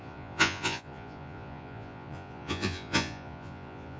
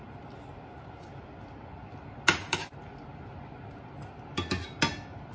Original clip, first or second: second